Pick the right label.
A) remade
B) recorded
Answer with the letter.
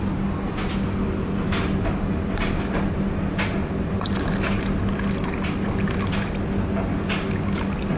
B